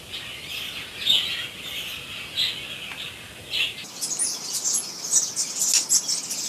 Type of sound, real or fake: real